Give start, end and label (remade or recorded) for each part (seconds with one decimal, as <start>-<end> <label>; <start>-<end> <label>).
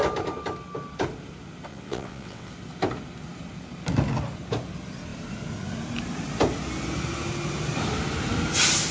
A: 0.0-1.7 recorded; 1.7-2.5 remade; 2.5-8.9 recorded